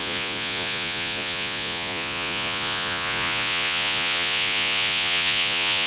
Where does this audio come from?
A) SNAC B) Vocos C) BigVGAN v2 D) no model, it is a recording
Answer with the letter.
B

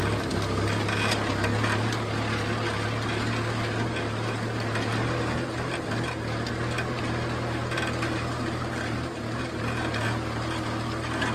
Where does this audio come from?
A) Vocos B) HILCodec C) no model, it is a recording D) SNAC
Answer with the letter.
C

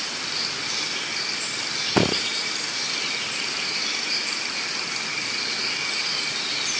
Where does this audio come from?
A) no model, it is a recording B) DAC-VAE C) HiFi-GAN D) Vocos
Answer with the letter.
A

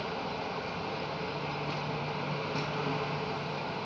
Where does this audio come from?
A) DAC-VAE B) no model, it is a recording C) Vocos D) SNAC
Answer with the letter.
B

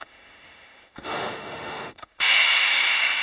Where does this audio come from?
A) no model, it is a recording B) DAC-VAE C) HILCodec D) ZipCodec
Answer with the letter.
B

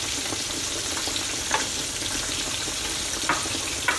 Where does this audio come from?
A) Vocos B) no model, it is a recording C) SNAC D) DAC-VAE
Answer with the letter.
B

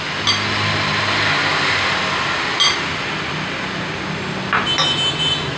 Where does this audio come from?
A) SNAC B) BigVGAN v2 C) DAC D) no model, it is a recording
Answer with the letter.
D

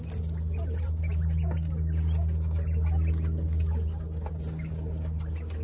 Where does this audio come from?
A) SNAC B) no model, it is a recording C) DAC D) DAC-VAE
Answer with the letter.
B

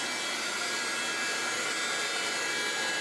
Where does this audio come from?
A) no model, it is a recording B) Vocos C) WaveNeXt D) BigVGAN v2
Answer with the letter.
A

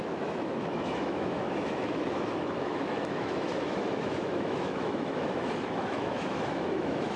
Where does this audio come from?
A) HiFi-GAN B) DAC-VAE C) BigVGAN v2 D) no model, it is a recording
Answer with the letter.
B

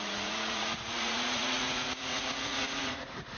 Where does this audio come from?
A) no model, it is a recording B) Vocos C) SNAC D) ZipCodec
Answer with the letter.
B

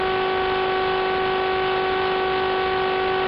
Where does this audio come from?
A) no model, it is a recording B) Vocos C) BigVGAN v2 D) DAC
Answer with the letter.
A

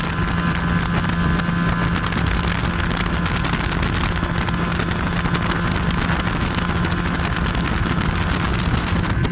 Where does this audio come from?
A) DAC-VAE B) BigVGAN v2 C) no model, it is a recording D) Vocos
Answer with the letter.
C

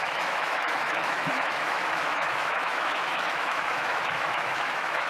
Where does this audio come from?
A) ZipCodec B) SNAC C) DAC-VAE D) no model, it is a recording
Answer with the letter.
C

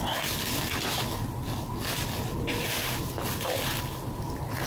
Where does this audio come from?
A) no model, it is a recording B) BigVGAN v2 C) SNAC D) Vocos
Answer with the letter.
A